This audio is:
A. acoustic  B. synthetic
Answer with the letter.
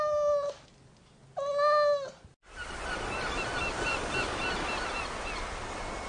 A